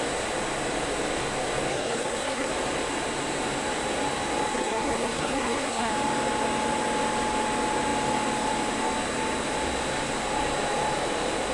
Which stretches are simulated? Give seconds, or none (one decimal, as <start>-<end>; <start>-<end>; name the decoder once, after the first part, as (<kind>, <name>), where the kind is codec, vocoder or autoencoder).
1.7-2.5 (codec, SNAC); 4.5-5.9